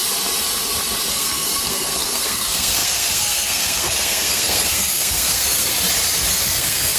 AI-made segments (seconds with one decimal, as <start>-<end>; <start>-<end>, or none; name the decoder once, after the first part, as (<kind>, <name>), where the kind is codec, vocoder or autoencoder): 1.1-5.7 (codec, SNAC); 6.3-7.0